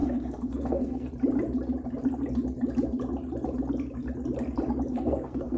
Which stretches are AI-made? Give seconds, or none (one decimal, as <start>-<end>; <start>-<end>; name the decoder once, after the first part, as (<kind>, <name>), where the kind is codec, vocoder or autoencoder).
0.0-1.1 (codec, SNAC); 4.9-5.6

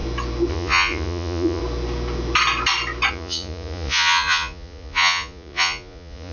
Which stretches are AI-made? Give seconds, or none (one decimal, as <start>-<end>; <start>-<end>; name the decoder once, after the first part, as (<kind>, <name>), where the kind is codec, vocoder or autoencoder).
0.5-1.6 (vocoder, Vocos); 3.1-6.3

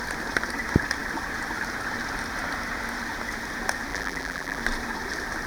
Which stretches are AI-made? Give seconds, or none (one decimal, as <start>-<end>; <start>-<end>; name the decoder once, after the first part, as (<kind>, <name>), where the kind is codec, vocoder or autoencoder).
3.9-4.6 (vocoder, BigVGAN v2)

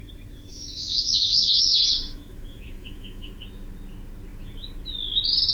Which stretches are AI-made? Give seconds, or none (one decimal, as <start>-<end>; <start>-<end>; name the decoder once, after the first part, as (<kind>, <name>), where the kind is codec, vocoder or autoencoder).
0.5-3.3 (autoencoder, DAC-VAE)